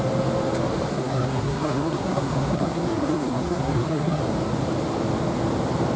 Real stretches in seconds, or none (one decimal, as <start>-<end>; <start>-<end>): 0.0-0.9; 4.2-6.0